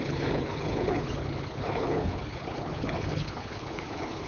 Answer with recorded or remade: remade